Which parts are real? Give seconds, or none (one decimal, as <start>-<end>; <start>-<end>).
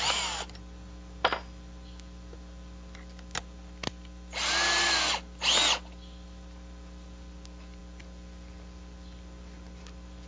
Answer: 0.0-10.3